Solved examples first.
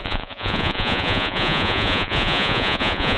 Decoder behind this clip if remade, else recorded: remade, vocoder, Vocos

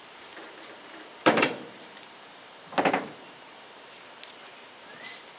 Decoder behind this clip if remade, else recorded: remade, vocoder, BigVGAN v2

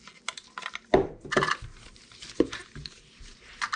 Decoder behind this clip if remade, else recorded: recorded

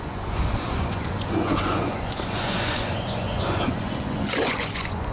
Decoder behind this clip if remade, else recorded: remade, vocoder, Vocos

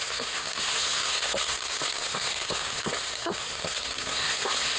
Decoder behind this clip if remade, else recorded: remade, codec, SNAC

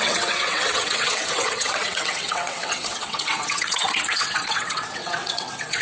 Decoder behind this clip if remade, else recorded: remade, vocoder, WaveNeXt